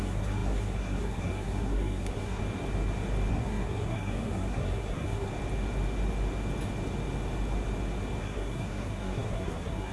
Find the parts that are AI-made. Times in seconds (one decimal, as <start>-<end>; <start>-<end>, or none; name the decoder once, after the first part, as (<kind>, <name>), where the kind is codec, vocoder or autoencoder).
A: 0.0-2.4 (codec, SNAC); 3.3-5.3; 8.2-9.9